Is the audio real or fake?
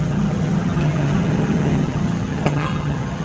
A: fake